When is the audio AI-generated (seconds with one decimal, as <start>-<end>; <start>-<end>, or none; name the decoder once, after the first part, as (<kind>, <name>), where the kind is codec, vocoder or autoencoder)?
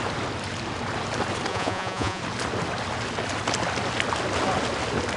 1.5-2.2 (vocoder, Vocos)